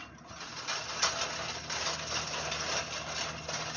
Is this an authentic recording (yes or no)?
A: yes